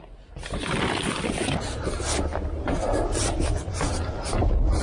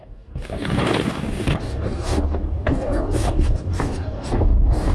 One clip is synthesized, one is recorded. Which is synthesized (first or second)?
second